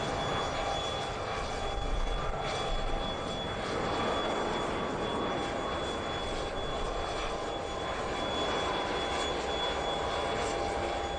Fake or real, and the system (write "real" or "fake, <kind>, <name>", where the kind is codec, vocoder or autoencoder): real